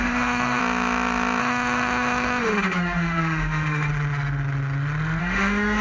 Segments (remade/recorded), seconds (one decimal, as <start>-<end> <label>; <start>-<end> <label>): 0.0-0.6 remade; 0.6-1.4 recorded; 1.4-3.9 remade; 3.9-5.2 recorded; 5.2-5.8 remade